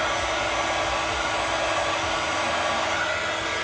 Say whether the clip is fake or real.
real